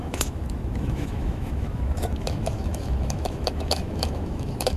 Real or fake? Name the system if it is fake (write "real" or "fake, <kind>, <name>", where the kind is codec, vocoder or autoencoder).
fake, autoencoder, DAC-VAE